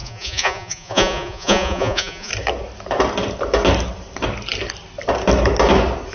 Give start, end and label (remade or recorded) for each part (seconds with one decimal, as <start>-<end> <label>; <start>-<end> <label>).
0.0-2.3 remade; 2.3-6.1 recorded